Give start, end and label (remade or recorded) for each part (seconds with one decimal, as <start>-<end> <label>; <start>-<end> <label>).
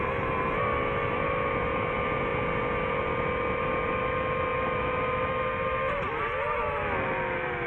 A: 0.0-7.7 recorded